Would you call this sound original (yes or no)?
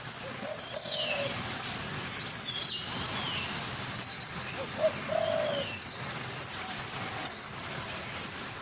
yes